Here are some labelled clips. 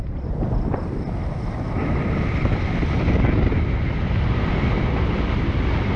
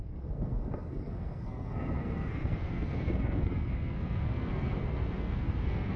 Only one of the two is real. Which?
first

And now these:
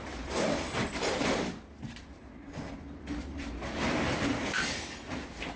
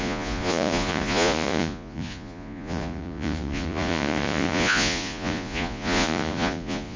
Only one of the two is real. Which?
first